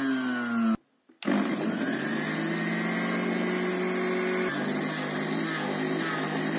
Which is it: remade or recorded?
recorded